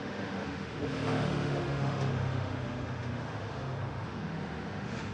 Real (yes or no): no